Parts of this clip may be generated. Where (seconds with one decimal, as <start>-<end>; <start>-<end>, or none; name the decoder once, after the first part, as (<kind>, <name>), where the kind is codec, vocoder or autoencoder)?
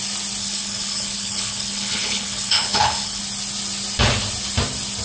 0.4-3.2 (codec, HILCodec)